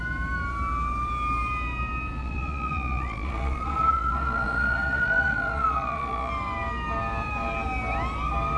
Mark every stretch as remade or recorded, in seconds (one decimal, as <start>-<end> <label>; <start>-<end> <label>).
0.0-2.2 recorded; 2.2-6.3 remade; 6.3-8.6 recorded